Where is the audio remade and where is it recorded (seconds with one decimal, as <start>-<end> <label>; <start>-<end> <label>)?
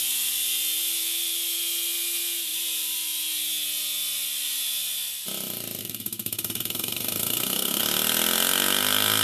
0.0-5.8 recorded; 5.8-7.8 remade; 7.8-9.2 recorded